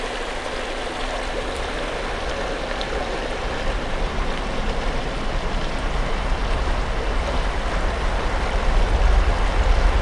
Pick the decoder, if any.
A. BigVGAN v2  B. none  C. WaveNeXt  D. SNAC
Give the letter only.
B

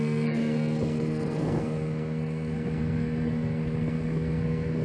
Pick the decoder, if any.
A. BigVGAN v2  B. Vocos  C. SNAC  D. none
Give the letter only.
C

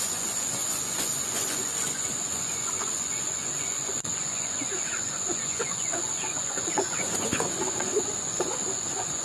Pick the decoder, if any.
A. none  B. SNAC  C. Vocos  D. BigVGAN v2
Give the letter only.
C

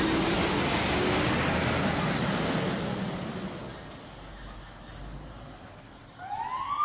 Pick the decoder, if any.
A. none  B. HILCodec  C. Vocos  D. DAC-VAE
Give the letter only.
A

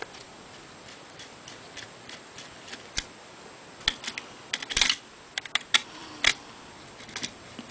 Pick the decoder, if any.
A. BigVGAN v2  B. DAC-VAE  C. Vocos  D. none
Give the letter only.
D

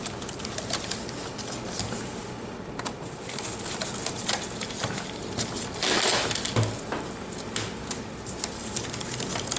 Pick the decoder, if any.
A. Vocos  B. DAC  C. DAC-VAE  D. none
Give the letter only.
D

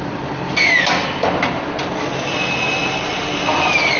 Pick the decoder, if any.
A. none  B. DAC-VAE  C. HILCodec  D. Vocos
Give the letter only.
A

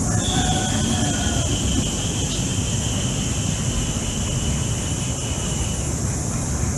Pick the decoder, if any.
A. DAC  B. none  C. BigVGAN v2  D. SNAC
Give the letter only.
B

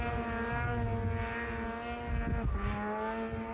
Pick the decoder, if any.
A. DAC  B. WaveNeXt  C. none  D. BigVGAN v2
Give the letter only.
C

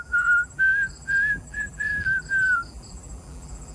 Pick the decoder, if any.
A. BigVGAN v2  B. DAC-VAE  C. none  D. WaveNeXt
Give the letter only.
A